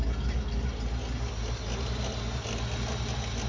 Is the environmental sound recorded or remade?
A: recorded